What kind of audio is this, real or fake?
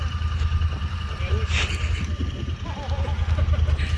real